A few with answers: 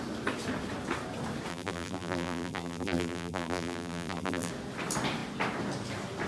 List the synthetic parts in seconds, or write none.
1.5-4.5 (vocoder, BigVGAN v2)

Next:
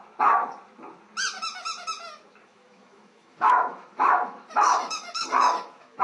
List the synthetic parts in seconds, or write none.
2.4-6.0 (autoencoder, DAC-VAE)

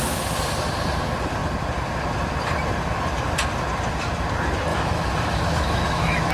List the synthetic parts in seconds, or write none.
4.7-6.3 (autoencoder, DAC-VAE)

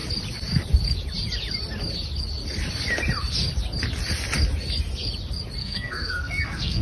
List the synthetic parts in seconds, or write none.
5.6-6.8 (codec, SNAC)

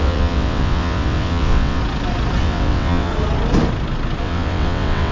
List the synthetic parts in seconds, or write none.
0.0-1.8 (vocoder, WaveNeXt); 2.4-3.1; 4.2-5.1

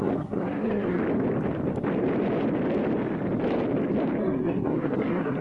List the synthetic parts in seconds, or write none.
0.0-1.0 (codec, SNAC); 4.2-5.4

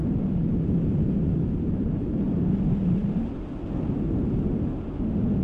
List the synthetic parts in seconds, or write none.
0.0-3.2 (vocoder, BigVGAN v2)